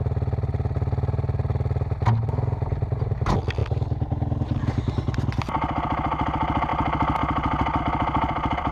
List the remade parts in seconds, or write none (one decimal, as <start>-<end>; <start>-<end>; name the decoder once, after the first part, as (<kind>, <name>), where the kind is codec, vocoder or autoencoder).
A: none